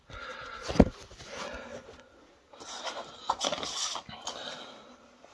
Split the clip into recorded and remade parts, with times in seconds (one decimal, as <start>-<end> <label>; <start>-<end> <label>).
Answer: 0.0-5.3 recorded